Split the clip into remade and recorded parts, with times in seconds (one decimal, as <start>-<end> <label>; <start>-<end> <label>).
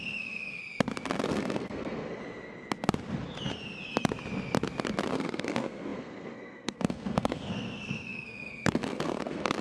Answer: 0.0-0.6 remade; 0.6-1.3 recorded; 1.3-2.2 remade; 2.2-5.1 recorded; 5.1-9.6 remade